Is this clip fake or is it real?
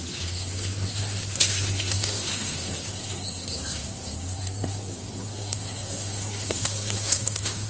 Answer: fake